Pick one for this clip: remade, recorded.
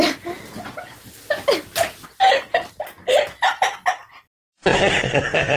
recorded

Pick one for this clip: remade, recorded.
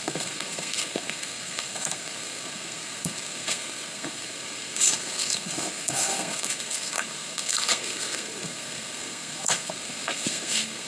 remade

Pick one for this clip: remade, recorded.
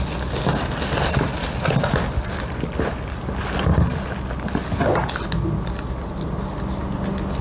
recorded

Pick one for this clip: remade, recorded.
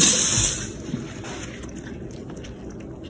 recorded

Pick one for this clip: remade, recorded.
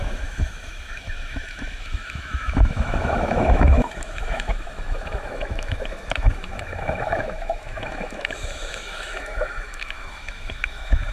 remade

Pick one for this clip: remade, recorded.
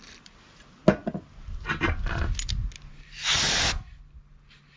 recorded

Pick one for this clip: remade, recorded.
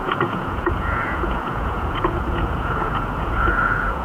remade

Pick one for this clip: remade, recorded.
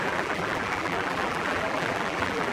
remade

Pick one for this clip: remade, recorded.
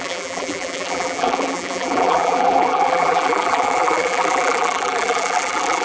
remade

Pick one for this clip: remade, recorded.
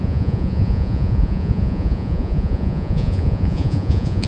remade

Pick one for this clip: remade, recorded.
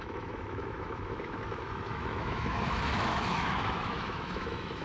remade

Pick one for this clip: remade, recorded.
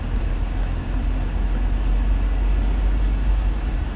recorded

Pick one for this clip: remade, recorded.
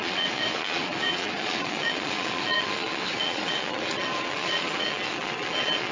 remade